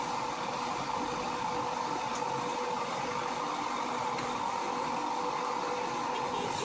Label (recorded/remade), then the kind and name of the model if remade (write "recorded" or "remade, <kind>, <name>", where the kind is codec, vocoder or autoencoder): recorded